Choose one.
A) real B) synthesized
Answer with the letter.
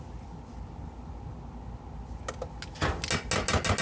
A